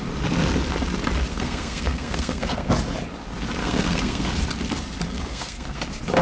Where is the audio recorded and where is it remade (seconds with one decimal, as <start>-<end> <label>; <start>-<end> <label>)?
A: 0.0-1.3 recorded; 1.3-2.7 remade; 2.7-3.6 recorded; 3.6-4.3 remade; 4.3-5.3 recorded; 5.3-5.8 remade; 5.8-6.2 recorded